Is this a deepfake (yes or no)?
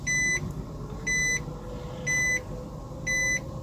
no